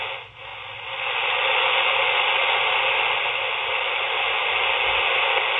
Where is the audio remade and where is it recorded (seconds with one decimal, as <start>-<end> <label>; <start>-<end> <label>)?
0.0-5.6 recorded